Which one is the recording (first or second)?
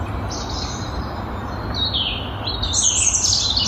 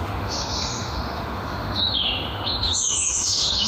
first